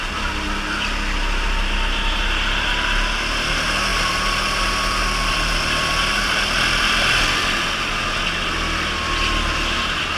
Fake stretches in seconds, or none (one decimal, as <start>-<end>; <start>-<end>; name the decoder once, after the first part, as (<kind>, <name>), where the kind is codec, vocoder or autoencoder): 3.9-7.2 (vocoder, BigVGAN v2)